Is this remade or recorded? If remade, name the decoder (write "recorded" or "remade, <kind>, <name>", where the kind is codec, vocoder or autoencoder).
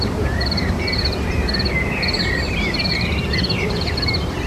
remade, vocoder, BigVGAN v2